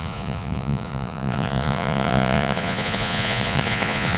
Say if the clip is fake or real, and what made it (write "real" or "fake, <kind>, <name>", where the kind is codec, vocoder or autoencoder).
fake, vocoder, Vocos